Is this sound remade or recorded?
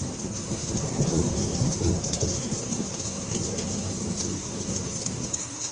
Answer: remade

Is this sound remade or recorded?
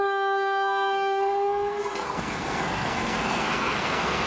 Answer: remade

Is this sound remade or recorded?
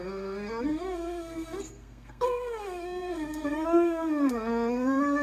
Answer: remade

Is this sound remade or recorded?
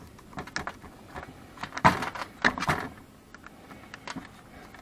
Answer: recorded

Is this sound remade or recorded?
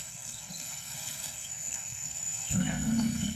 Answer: remade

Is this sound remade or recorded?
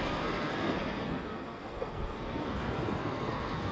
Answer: remade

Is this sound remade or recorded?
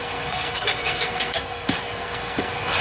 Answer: remade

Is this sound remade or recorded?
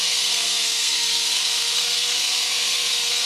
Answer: remade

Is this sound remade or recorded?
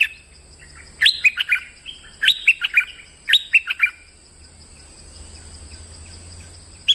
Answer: recorded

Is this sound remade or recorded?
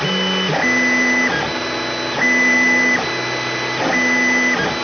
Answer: recorded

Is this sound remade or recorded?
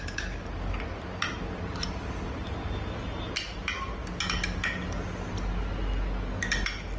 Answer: recorded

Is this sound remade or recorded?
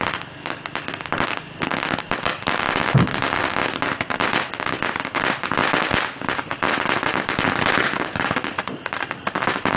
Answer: recorded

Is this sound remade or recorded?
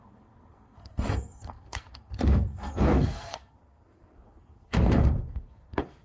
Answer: remade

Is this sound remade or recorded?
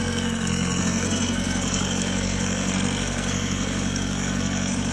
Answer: remade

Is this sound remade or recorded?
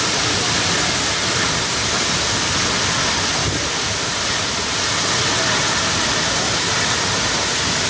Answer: recorded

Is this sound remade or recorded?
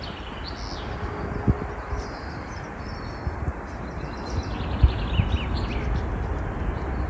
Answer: recorded